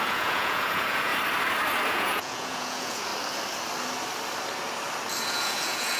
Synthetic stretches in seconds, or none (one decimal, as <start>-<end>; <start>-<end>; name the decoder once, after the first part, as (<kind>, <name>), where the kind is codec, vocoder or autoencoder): 0.0-1.1 (vocoder, Vocos); 1.9-3.1; 5.2-6.0